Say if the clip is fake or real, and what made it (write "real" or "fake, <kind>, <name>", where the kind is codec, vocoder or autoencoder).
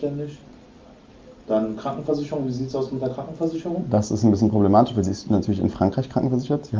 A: real